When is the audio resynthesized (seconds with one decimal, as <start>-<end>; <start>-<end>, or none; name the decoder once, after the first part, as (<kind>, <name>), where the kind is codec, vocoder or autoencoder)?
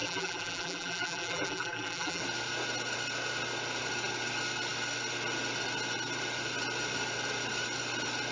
0.0-2.2 (vocoder, BigVGAN v2)